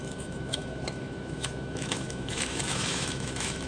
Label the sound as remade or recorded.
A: remade